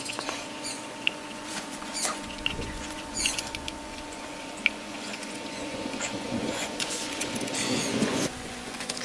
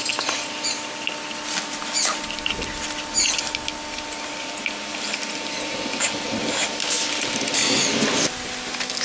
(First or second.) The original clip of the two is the second